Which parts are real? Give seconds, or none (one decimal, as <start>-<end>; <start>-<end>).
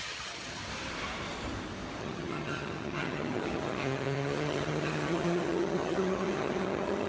0.6-2.0